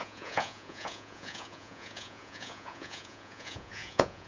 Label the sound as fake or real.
fake